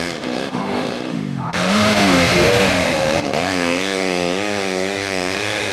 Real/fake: fake